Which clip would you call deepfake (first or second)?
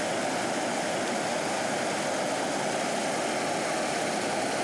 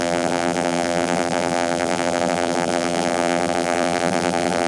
second